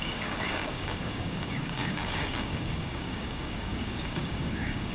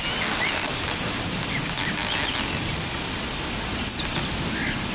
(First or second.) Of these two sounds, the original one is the second